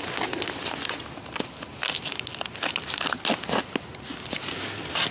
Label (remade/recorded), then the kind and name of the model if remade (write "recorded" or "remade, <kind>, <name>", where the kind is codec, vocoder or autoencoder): recorded